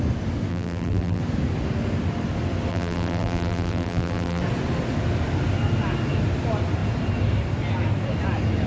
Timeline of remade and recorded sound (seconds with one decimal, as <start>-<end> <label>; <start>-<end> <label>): 0.0-0.5 recorded; 0.5-1.2 remade; 1.2-2.7 recorded; 2.7-4.4 remade; 4.4-8.7 recorded